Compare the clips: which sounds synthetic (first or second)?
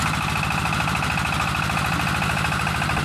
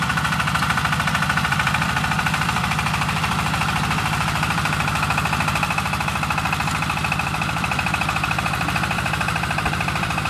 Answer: second